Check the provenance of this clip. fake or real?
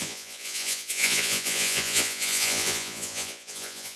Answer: fake